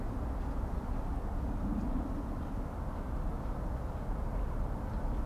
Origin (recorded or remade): recorded